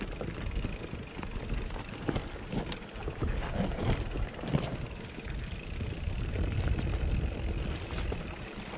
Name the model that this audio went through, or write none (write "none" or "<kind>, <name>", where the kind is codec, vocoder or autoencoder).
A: none